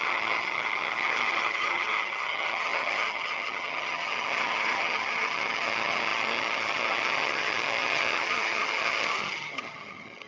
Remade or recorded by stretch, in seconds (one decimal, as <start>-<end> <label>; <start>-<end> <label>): 0.0-10.3 remade